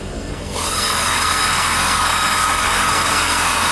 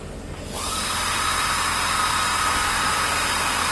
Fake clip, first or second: first